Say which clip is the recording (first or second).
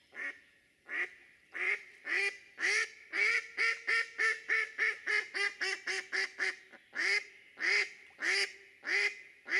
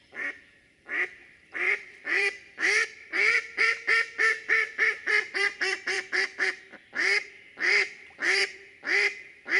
first